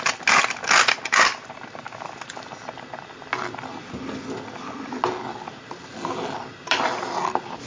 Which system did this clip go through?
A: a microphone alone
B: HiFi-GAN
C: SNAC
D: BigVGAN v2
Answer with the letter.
A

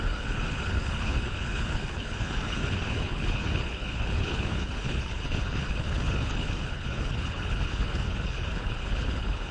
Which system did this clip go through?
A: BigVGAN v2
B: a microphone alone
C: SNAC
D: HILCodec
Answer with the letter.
D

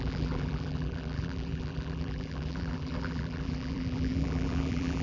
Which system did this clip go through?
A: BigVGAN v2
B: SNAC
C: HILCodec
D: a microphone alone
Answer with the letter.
A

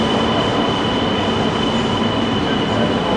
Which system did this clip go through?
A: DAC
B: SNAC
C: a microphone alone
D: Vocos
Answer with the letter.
C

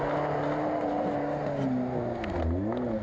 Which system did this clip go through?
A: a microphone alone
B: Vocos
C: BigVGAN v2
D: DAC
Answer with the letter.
A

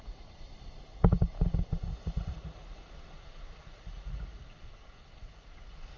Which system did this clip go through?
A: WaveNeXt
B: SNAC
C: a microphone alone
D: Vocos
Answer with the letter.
D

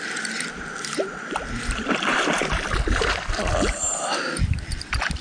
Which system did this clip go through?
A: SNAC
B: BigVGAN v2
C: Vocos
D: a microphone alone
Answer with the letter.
D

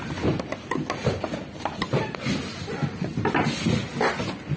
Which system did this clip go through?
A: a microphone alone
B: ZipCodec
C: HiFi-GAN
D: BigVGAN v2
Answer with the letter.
A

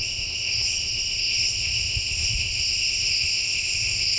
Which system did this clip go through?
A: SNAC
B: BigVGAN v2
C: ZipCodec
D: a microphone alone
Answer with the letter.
C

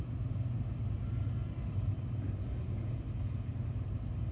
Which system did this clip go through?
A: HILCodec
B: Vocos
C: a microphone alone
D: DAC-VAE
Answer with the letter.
C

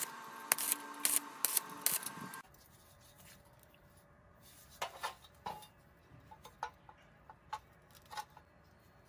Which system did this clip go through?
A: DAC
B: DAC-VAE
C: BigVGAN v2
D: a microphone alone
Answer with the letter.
D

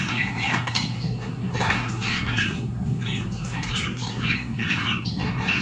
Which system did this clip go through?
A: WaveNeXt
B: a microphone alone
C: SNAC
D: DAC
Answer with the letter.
C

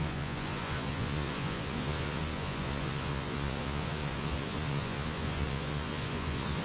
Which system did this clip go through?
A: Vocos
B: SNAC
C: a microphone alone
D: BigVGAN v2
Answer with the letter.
A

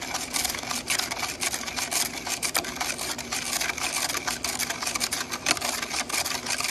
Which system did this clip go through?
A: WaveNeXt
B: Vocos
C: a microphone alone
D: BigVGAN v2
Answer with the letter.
D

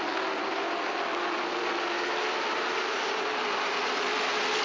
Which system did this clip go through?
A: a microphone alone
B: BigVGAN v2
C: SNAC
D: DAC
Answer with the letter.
A